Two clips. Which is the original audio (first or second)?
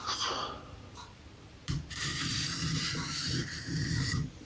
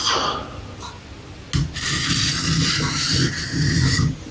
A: second